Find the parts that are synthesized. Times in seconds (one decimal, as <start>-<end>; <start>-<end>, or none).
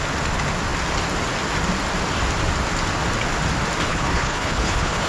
3.9-5.1